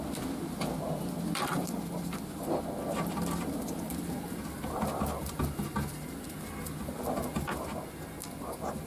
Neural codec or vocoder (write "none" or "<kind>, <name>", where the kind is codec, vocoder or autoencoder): vocoder, BigVGAN v2